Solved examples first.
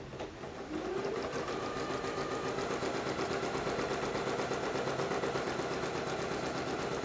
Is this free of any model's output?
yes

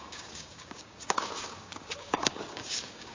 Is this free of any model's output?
no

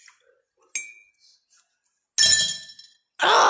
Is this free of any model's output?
yes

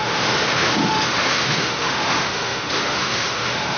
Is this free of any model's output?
no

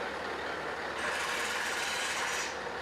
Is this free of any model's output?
no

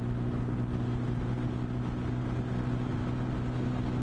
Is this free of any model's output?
yes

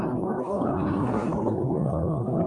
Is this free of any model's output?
no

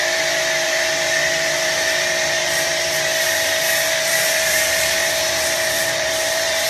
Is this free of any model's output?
no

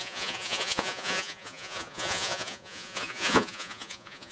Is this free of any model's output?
no